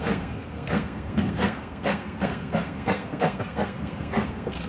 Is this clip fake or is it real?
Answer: fake